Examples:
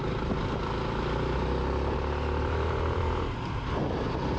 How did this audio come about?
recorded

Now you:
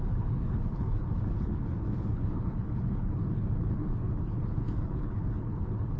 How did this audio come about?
remade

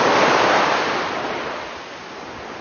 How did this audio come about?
recorded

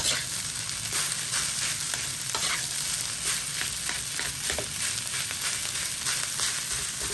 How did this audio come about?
recorded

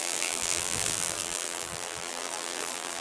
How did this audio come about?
remade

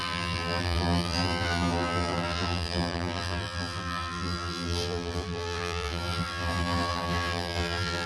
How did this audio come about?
remade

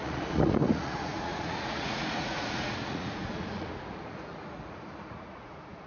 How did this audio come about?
remade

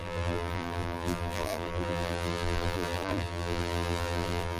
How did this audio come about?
remade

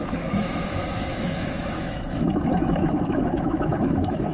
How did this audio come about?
remade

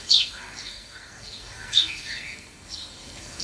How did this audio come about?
remade